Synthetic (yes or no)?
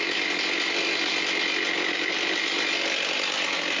no